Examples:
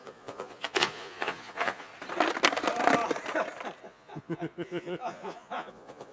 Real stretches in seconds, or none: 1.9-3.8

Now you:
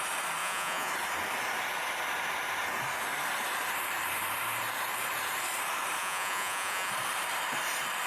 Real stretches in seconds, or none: 0.0-0.4; 0.9-6.0; 6.9-8.1

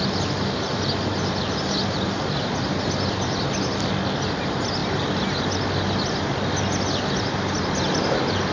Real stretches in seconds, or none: 0.0-8.5